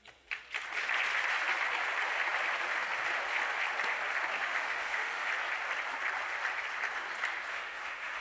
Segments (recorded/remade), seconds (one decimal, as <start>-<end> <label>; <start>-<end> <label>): 0.0-4.4 recorded; 4.4-5.3 remade; 5.3-7.5 recorded; 7.5-8.2 remade

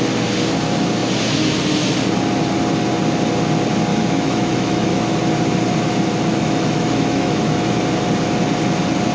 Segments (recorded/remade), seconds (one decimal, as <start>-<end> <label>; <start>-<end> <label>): 0.0-3.9 recorded; 3.9-5.0 remade; 5.0-6.3 recorded; 6.3-7.8 remade; 7.8-9.1 recorded

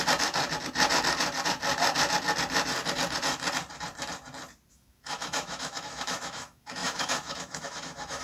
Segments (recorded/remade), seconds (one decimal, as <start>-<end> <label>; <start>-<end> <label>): 0.0-4.7 recorded; 4.7-8.2 remade

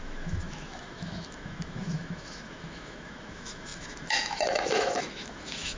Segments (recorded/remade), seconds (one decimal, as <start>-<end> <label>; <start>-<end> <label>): 0.0-5.8 remade

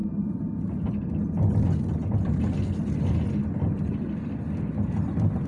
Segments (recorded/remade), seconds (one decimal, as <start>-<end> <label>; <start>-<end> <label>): 0.0-5.5 recorded

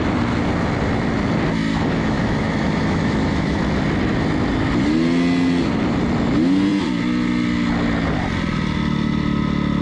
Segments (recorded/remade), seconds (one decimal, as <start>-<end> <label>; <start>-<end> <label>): 0.0-1.7 recorded; 1.7-3.6 remade; 3.6-9.8 recorded

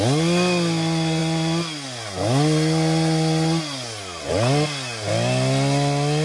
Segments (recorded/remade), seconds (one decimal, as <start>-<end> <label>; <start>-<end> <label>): 0.0-6.2 recorded